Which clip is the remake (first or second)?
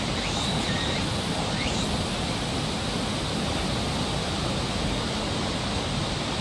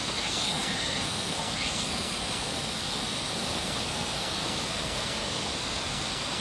second